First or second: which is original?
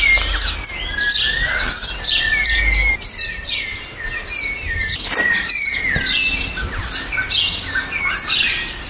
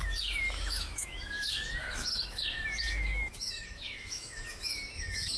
first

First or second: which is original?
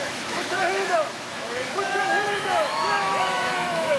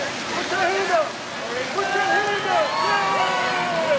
second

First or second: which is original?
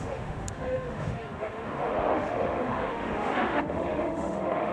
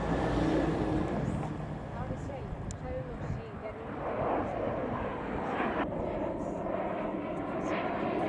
second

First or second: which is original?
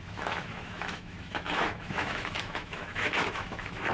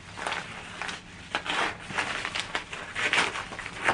second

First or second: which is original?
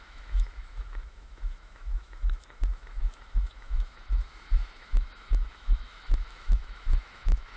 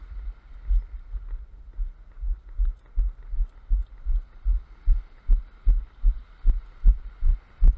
second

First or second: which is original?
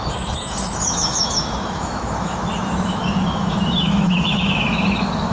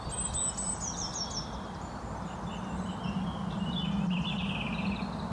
second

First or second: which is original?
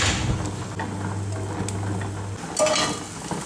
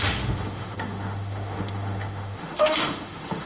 first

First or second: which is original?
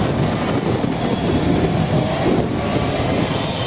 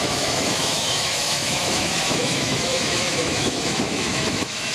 first